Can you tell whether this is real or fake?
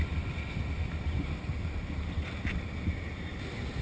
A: real